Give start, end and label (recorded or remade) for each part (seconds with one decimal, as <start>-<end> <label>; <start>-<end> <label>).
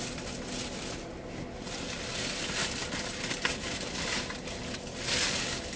0.0-5.8 recorded